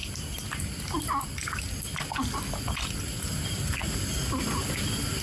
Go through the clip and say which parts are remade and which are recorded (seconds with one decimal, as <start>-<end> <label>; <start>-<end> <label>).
0.0-5.2 recorded